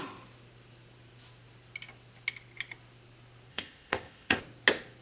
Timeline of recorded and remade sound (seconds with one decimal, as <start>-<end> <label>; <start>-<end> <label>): 0.0-3.5 recorded; 3.5-4.4 remade; 4.4-5.0 recorded